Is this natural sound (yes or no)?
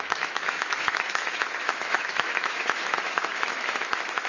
no